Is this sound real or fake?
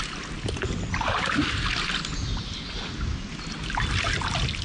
real